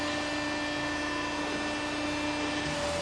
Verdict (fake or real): real